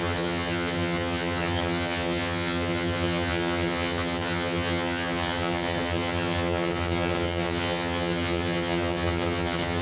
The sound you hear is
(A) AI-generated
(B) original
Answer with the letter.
A